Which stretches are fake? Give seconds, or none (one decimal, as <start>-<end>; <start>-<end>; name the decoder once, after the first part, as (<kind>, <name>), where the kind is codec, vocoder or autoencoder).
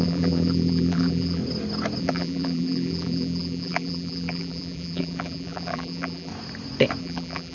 0.0-1.4 (vocoder, BigVGAN v2); 2.0-6.3; 7.0-7.5